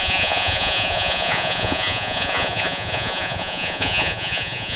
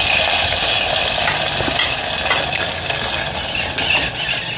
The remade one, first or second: first